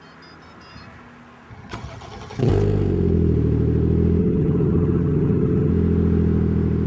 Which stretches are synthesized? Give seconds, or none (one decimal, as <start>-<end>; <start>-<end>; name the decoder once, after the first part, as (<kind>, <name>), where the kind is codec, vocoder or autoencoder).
1.5-2.5 (vocoder, HiFi-GAN); 4.2-5.7